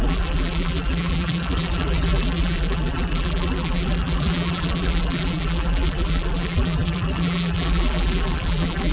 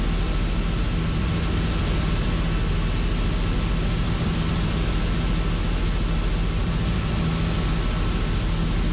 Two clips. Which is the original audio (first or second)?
second